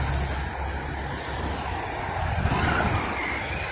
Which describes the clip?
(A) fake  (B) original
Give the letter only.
B